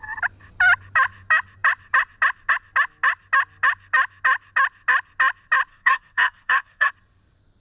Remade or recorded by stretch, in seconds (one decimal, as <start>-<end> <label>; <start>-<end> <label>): 0.0-5.7 recorded; 5.7-6.9 remade; 6.9-7.6 recorded